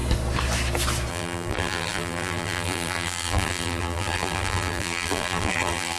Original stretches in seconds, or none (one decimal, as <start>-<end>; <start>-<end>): 0.0-1.1